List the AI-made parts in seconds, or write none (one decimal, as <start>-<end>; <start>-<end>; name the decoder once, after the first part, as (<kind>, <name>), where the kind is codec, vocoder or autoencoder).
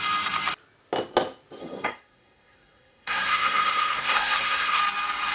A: 1.6-4.8 (codec, SNAC)